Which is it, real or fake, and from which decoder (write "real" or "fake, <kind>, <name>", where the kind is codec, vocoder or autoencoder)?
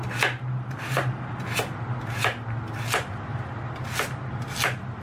real